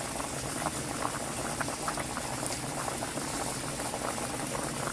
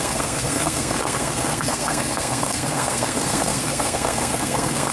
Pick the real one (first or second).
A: first